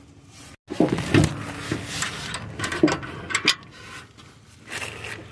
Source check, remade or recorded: recorded